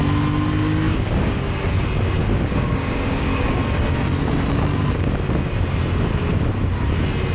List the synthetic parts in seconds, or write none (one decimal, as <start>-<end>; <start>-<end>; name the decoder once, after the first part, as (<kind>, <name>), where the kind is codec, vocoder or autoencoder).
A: 0.9-1.8 (codec, DAC); 2.2-3.6